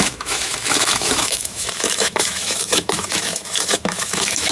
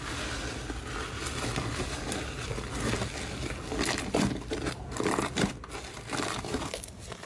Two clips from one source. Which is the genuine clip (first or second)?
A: second